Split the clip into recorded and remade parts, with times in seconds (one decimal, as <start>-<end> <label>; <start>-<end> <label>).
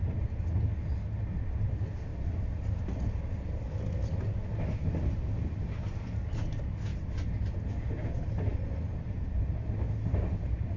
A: 0.0-10.8 recorded